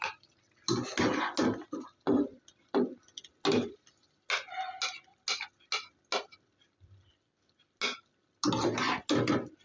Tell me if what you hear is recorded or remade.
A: recorded